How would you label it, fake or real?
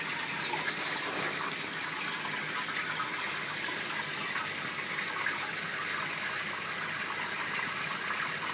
real